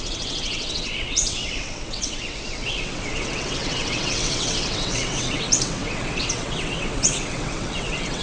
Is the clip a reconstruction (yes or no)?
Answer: yes